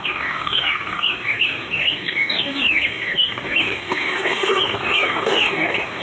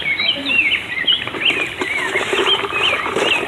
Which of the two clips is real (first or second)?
second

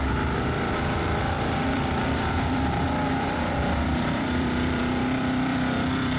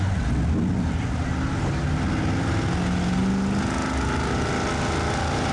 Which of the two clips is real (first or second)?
second